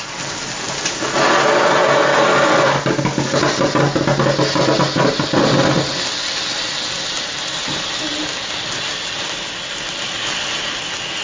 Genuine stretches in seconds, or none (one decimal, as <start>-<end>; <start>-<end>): 0.0-2.3; 3.4-11.2